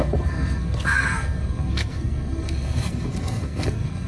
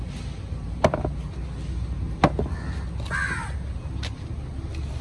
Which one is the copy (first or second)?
first